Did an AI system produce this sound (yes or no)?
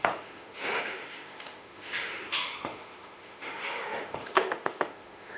yes